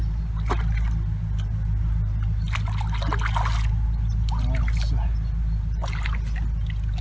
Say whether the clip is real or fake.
real